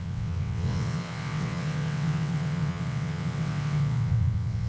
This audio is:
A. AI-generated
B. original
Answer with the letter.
A